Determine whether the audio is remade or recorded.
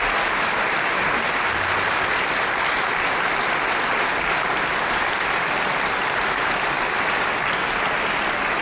recorded